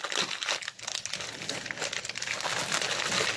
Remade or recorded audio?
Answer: recorded